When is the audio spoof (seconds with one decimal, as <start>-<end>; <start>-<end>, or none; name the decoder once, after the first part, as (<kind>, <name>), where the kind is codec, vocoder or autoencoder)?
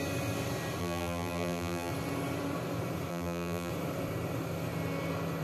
0.8-1.9 (vocoder, BigVGAN v2); 3.1-3.7